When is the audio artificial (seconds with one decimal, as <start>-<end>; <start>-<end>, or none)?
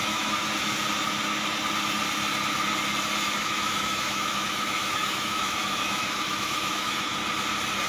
0.0-0.4; 3.4-7.2